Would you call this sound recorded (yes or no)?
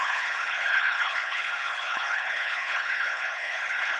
no